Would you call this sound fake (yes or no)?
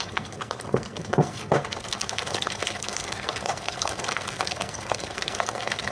yes